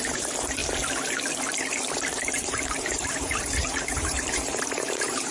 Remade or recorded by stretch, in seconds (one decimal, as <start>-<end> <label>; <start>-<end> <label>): 0.0-0.6 remade; 0.6-2.2 recorded; 2.2-5.3 remade